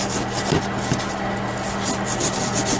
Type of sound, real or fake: real